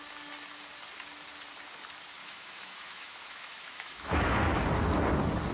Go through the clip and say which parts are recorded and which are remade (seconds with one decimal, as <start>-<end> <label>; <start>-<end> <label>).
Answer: 0.0-2.2 recorded; 2.2-4.2 remade; 4.2-5.5 recorded